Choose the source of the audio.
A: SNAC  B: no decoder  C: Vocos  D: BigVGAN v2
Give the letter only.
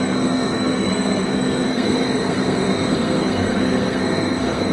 A